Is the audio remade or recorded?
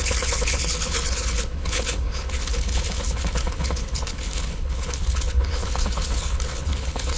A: remade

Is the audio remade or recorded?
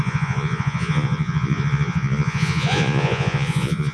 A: remade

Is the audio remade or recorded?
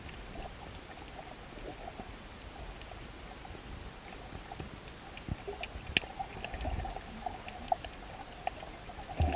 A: recorded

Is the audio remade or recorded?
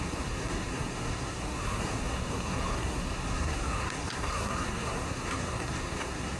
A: remade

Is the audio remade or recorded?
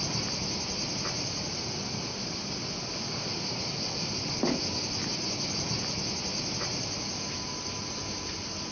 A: recorded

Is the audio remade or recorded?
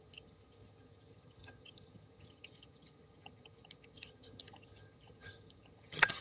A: remade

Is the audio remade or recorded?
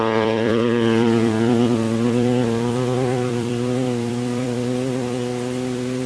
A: remade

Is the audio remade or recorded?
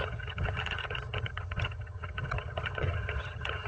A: remade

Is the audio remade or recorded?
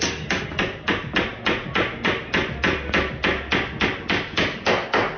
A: recorded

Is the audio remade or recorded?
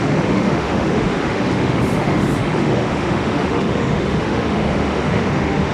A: remade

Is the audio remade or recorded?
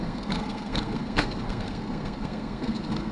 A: remade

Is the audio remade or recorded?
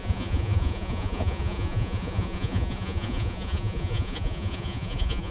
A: remade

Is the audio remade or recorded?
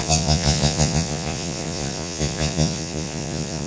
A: remade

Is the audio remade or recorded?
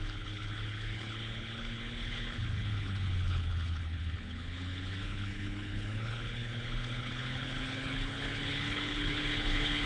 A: remade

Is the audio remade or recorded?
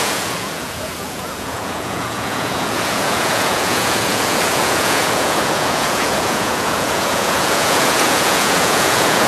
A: remade